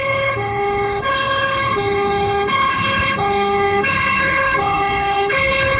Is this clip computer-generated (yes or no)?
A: yes